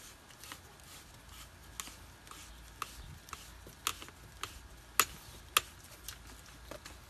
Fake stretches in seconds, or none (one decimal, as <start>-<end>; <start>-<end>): none